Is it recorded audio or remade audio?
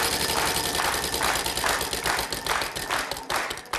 recorded